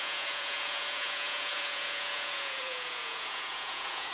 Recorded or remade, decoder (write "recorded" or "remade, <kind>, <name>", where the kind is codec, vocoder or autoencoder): remade, vocoder, Vocos